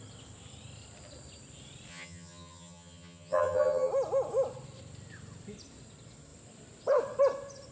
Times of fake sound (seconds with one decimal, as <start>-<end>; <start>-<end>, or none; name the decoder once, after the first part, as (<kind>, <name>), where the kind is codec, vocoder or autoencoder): 1.9-3.9 (vocoder, HiFi-GAN)